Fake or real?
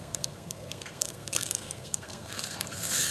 fake